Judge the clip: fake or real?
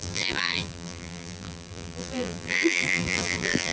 fake